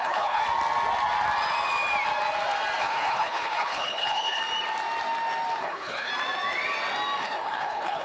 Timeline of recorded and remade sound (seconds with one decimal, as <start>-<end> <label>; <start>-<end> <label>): 0.0-0.4 remade; 0.4-2.8 recorded; 2.8-4.4 remade; 4.4-5.6 recorded; 5.6-6.1 remade; 6.1-7.2 recorded; 7.2-8.0 remade